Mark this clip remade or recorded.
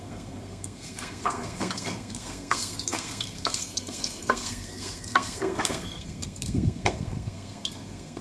remade